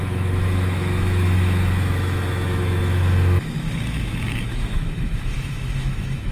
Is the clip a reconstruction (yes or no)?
yes